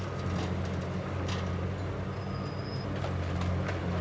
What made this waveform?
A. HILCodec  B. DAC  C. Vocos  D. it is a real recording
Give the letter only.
D